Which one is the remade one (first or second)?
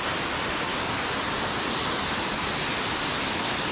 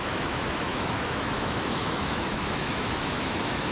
second